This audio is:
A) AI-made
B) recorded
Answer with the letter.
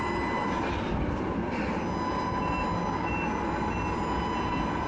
B